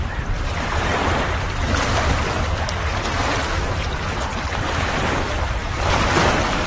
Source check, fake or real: fake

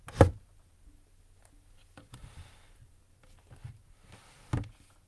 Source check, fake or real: real